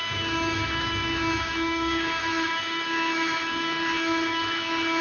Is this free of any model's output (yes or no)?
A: no